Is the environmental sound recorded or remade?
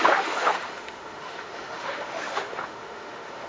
remade